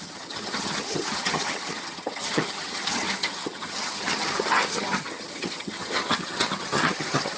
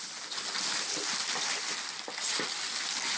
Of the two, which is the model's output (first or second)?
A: first